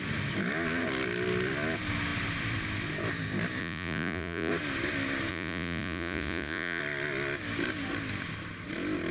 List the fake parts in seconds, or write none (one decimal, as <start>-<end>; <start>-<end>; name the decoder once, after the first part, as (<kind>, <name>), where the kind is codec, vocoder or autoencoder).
3.6-4.5 (vocoder, Vocos); 5.3-6.8

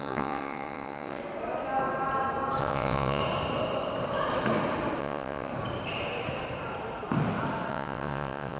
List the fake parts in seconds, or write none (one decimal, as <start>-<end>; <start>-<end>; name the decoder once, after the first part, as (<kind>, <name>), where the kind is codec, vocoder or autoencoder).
0.0-1.2 (vocoder, WaveNeXt); 2.6-3.2; 5.0-5.5; 7.7-8.6

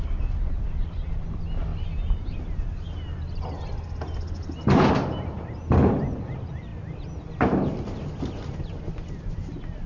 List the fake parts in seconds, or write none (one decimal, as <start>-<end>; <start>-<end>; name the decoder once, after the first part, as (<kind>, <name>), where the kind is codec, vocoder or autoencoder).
none

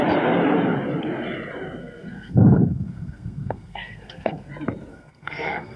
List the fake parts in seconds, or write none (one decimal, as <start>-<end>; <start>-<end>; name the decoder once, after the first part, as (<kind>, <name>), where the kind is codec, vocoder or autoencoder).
1.8-4.5 (codec, SNAC); 4.9-5.8

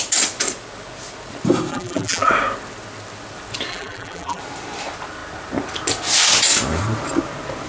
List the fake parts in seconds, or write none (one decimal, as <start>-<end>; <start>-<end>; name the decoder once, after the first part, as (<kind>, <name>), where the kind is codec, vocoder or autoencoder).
1.7-2.3 (vocoder, BigVGAN v2); 3.7-4.4

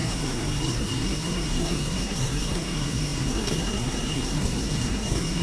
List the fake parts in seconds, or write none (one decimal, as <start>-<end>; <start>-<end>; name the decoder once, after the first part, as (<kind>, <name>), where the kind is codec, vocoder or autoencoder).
0.0-5.4 (codec, SNAC)